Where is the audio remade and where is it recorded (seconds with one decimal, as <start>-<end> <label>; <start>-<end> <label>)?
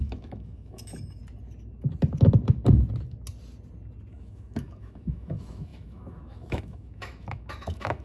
0.0-1.2 remade; 1.2-4.1 recorded; 4.1-8.0 remade